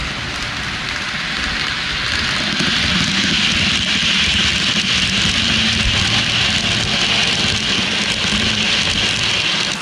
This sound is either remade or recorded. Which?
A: recorded